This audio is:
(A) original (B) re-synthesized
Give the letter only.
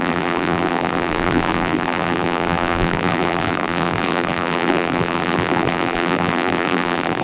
B